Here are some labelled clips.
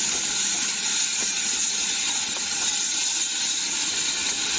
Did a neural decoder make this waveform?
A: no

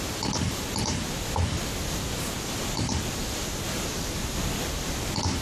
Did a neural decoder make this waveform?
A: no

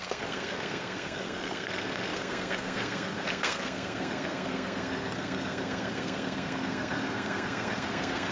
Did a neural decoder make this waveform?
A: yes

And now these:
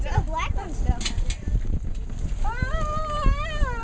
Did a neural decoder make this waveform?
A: no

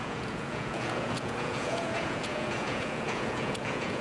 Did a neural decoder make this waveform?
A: yes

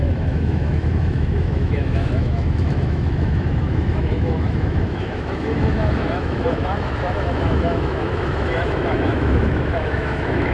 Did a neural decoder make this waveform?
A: yes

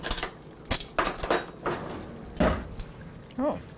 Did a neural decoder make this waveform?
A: no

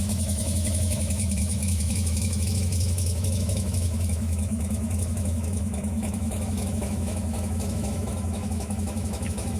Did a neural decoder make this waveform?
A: yes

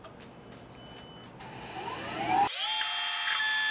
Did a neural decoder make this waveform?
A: no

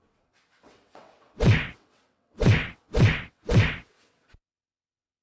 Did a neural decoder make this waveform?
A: yes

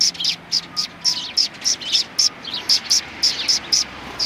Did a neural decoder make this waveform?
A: no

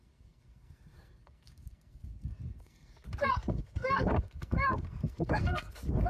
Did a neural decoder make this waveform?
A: yes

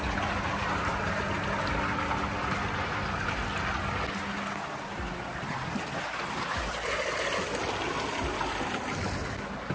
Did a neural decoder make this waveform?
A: no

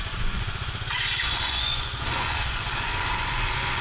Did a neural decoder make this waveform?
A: yes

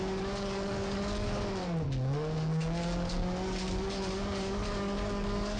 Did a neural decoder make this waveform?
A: yes